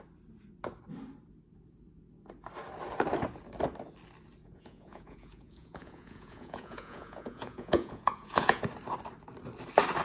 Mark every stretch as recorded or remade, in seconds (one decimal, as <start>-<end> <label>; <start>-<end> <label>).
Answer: 0.0-4.4 recorded; 4.4-8.6 remade; 8.6-10.0 recorded